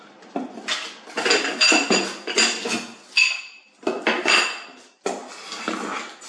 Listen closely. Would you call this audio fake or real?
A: real